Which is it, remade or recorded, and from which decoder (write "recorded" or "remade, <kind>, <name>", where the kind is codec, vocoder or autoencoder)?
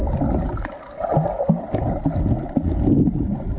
recorded